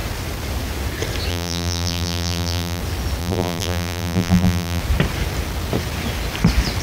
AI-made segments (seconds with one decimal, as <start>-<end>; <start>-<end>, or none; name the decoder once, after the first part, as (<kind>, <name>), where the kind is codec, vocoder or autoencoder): 1.3-2.8 (vocoder, BigVGAN v2); 3.2-4.8